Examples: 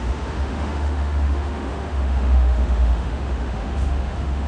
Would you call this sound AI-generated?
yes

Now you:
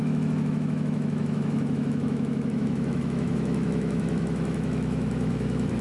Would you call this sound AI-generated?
yes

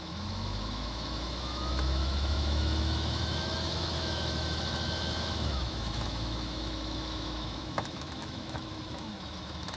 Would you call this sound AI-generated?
yes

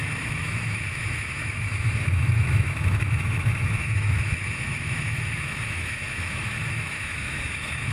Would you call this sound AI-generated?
yes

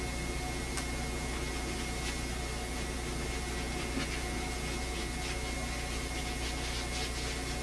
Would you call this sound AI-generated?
no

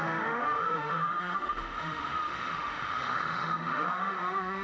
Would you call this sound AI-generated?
yes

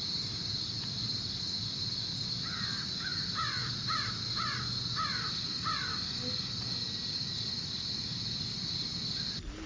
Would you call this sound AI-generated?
no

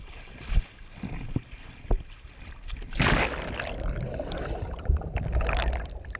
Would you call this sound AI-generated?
no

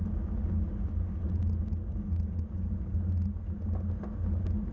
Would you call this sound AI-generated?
no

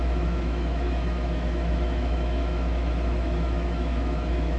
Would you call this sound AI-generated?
yes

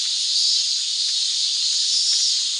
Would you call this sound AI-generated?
no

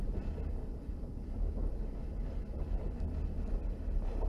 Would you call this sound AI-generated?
no